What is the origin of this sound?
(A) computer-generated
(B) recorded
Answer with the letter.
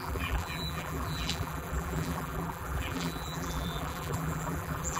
A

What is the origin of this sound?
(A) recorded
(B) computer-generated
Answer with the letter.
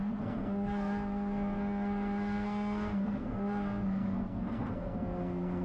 B